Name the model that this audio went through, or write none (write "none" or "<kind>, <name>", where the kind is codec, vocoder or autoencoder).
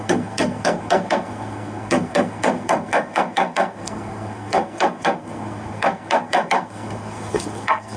codec, SNAC